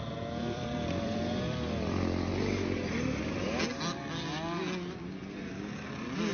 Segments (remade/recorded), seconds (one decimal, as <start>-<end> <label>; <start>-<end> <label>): 0.0-0.4 recorded; 0.4-2.3 remade; 2.3-6.3 recorded